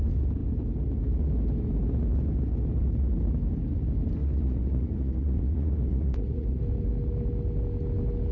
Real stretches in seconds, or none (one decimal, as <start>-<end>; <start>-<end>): 0.0-4.2; 6.6-8.3